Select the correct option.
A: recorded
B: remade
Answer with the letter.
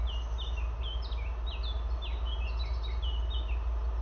A